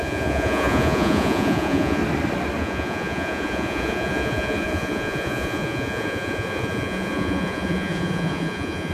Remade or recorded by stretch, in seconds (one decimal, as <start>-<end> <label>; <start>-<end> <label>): 0.0-2.0 remade; 2.0-2.6 recorded; 2.6-8.9 remade

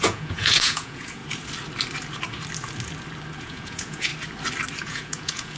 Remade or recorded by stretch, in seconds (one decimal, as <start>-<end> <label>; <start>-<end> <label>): 0.0-1.2 remade; 1.2-3.4 recorded; 3.4-4.1 remade; 4.1-4.8 recorded; 4.8-5.6 remade

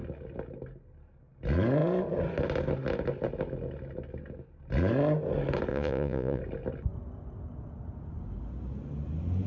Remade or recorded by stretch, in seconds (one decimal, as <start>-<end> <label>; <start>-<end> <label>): 0.0-5.7 recorded; 5.7-6.4 remade; 6.4-9.5 recorded

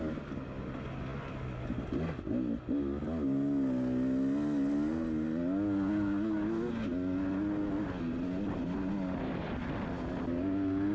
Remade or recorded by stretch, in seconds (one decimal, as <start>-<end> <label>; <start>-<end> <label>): 0.0-10.9 recorded

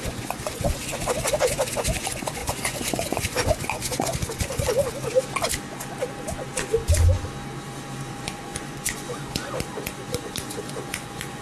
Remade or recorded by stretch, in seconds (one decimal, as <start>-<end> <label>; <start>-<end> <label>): 0.0-0.9 remade; 0.9-1.4 recorded; 1.4-4.1 remade; 4.1-8.1 recorded; 8.1-11.4 remade

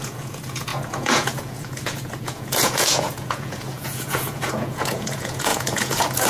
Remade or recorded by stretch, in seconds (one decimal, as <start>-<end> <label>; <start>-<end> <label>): 0.0-6.3 remade